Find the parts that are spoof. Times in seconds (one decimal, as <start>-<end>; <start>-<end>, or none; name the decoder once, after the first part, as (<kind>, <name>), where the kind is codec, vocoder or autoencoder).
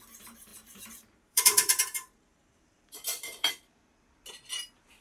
0.5-3.5 (vocoder, BigVGAN v2)